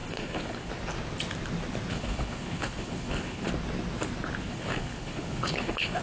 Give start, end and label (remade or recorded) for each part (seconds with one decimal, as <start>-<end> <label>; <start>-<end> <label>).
0.0-0.7 remade; 0.7-1.9 recorded; 1.9-3.5 remade; 3.5-4.4 recorded; 4.4-6.0 remade